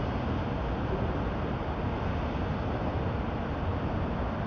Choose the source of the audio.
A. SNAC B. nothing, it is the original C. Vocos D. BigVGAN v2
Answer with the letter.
B